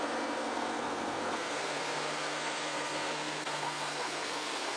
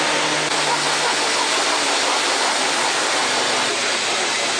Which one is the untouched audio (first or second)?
second